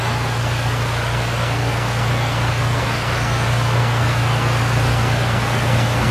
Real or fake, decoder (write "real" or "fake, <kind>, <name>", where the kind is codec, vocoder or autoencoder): fake, codec, SNAC